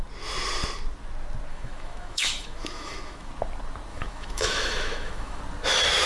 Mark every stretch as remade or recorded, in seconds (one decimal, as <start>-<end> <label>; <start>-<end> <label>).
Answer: 0.0-1.5 recorded; 1.5-3.3 remade; 3.3-3.9 recorded; 3.9-5.4 remade; 5.4-6.1 recorded